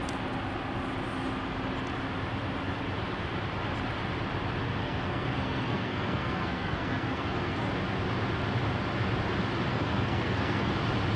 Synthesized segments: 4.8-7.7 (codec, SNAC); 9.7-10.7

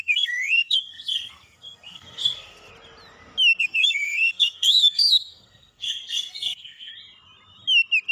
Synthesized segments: 0.0-2.7 (codec, SNAC); 3.6-6.9

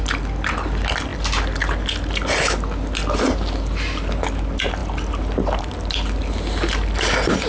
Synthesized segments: none

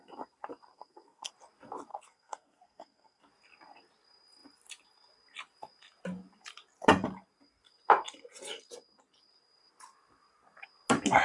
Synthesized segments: 0.7-1.3 (codec, SNAC); 1.9-3.2